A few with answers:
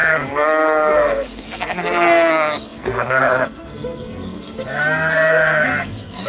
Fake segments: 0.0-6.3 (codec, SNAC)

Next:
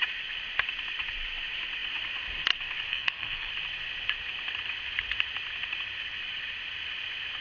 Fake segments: 2.9-3.5 (codec, SNAC)

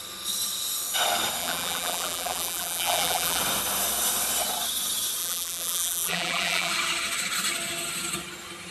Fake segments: 1.4-3.4 (vocoder, BigVGAN v2); 5.2-6.7

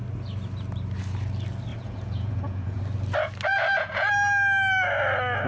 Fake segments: 1.7-2.8 (vocoder, Vocos); 3.5-4.1

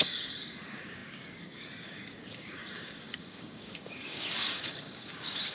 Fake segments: 0.0-5.5 (codec, DAC)